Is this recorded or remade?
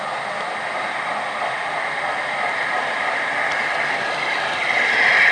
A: recorded